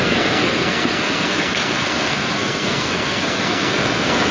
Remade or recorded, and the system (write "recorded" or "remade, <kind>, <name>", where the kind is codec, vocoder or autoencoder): remade, codec, SNAC